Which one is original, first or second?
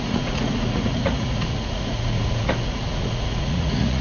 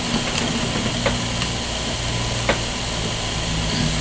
second